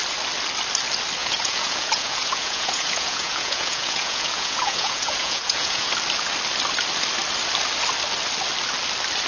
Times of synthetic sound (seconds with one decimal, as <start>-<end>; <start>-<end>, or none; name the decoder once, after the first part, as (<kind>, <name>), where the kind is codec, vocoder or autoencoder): 1.2-5.9 (vocoder, Vocos)